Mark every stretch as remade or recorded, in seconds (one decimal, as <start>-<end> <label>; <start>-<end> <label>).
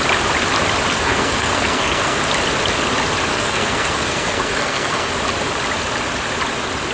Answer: 0.0-0.9 recorded; 0.9-2.2 remade; 2.2-3.3 recorded; 3.3-5.1 remade; 5.1-6.9 recorded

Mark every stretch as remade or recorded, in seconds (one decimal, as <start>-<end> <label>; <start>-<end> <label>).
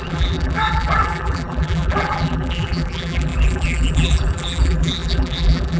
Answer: 0.0-5.8 remade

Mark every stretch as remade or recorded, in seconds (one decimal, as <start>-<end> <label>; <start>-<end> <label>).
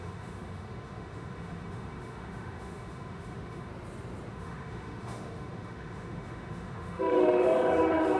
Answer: 0.0-3.7 remade; 3.7-4.3 recorded; 4.3-8.2 remade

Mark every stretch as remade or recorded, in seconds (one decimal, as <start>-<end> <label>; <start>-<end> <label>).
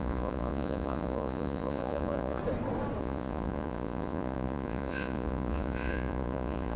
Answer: 0.0-2.4 remade; 2.4-3.0 recorded; 3.0-6.8 remade